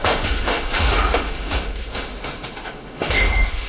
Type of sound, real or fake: fake